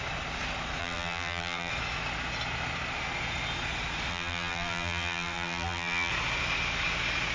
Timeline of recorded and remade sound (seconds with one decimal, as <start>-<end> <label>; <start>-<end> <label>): 0.0-0.8 recorded; 0.8-1.7 remade; 1.7-4.1 recorded; 4.1-6.1 remade; 6.1-7.3 recorded